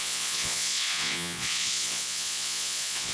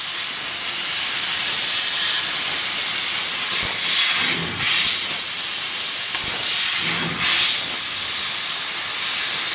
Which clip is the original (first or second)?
second